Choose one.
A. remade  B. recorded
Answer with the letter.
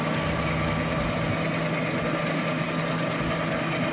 B